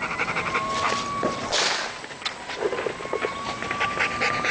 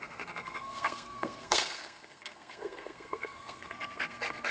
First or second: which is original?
first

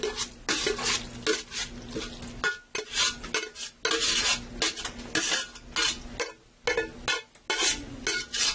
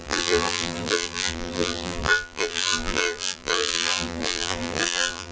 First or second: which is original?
first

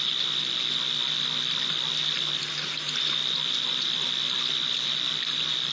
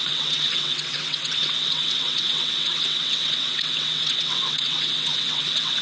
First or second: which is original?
first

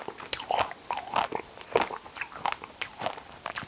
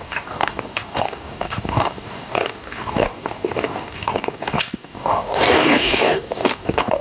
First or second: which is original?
first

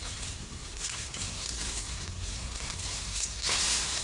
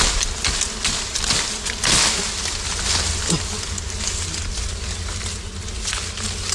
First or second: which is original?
second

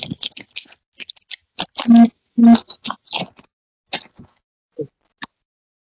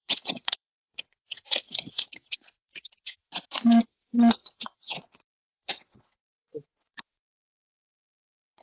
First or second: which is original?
first